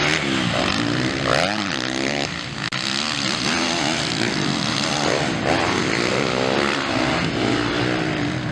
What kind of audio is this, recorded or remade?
recorded